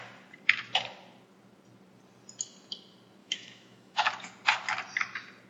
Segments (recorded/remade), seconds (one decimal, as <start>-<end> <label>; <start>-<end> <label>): 0.0-3.2 recorded; 3.2-4.1 remade; 4.1-5.5 recorded